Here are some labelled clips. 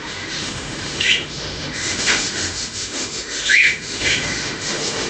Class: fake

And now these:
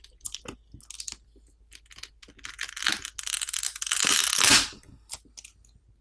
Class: real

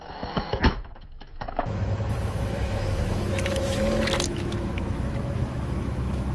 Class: fake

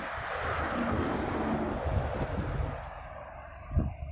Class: real